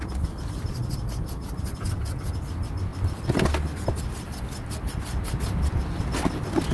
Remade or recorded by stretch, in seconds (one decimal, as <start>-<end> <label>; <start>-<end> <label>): 0.0-2.9 recorded; 2.9-5.4 remade; 5.4-6.7 recorded